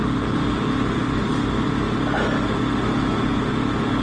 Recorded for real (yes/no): yes